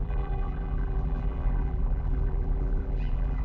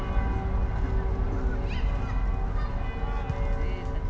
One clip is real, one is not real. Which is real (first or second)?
second